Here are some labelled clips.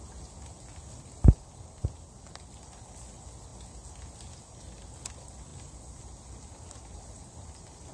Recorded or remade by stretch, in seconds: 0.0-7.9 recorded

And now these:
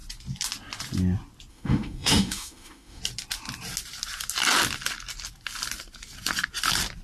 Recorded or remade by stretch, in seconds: 0.0-1.5 recorded; 1.5-3.0 remade; 3.0-7.0 recorded